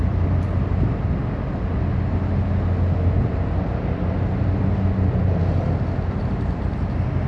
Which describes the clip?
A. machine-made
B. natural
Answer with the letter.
B